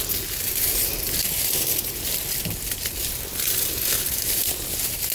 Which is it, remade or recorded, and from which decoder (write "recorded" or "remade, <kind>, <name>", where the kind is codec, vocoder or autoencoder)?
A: recorded